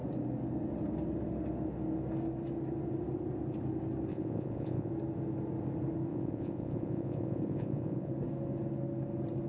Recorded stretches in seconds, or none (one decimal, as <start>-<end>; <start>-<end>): 0.0-4.1; 4.9-6.1; 8.1-9.5